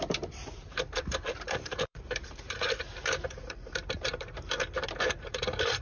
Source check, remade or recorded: remade